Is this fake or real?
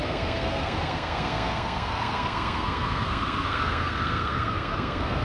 fake